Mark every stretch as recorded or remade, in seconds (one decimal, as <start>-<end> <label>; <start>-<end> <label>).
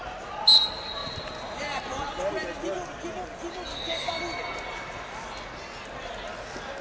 0.0-3.7 recorded; 3.7-4.2 remade; 4.2-6.8 recorded